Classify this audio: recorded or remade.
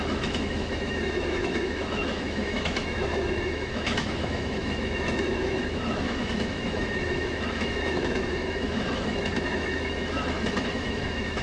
remade